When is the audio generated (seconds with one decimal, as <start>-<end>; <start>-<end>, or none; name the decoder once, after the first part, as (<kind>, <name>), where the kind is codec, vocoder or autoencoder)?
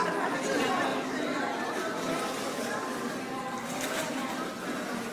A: none